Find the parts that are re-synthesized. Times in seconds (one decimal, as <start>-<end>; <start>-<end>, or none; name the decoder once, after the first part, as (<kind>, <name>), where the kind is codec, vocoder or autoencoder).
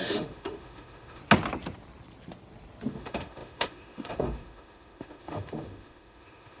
0.0-1.2 (autoencoder, DAC-VAE); 2.9-6.6